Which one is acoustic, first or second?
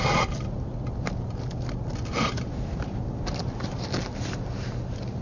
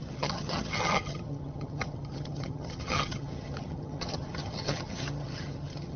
first